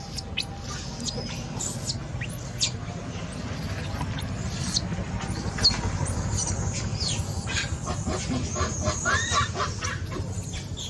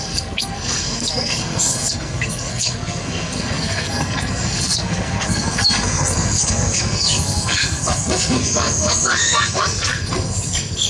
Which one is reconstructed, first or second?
second